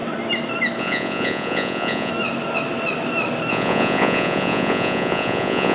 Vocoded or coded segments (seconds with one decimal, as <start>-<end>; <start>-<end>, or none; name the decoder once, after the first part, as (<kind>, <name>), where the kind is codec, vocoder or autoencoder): 0.8-2.1 (vocoder, Vocos); 3.5-5.7

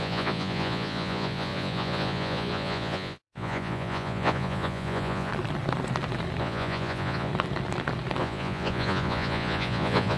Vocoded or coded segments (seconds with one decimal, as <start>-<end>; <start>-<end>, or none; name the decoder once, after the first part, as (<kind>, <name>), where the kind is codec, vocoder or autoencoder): 0.0-5.3 (vocoder, Vocos); 6.4-7.3; 8.2-10.2

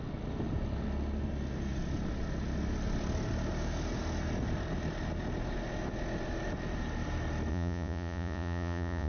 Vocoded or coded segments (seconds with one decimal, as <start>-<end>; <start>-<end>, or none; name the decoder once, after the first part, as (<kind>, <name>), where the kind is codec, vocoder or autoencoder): 7.5-9.1 (vocoder, Vocos)

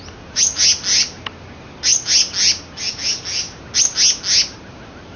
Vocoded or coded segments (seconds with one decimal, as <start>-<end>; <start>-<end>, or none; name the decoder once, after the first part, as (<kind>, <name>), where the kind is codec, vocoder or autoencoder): none

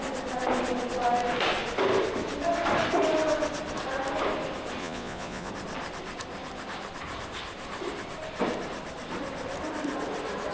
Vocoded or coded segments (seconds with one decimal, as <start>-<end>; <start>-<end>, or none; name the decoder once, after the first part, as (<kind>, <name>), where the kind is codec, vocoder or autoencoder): 4.8-5.5 (vocoder, Vocos)

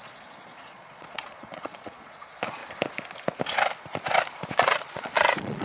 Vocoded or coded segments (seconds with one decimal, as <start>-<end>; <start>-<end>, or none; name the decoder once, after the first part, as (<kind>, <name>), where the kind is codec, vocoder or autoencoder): 0.0-2.6 (vocoder, Vocos); 4.5-5.6

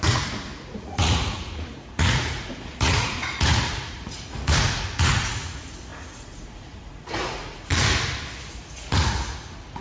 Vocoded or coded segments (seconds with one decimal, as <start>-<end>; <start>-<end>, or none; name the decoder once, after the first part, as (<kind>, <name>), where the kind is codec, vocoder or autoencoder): 0.0-7.7 (vocoder, Vocos); 8.5-9.8

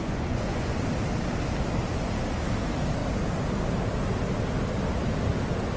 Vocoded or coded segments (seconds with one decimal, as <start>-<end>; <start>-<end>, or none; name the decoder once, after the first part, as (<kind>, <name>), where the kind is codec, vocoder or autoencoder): 0.0-0.8 (vocoder, Vocos)